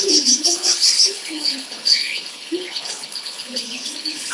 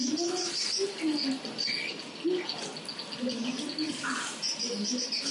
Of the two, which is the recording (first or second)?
second